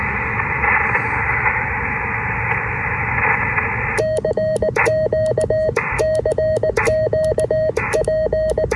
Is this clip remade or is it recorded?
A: recorded